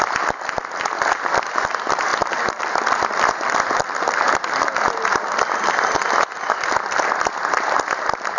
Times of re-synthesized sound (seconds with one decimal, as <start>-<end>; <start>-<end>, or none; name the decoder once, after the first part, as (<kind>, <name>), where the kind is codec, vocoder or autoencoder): none